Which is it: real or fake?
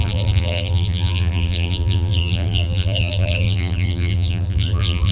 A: fake